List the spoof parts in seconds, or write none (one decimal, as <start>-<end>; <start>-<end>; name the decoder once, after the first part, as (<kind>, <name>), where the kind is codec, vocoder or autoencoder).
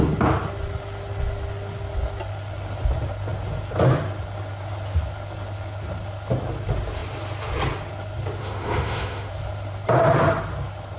8.4-9.3 (autoencoder, DAC-VAE)